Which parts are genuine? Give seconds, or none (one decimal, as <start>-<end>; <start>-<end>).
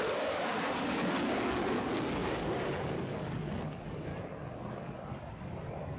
4.1-4.7